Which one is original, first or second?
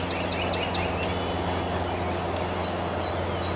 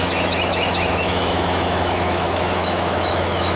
first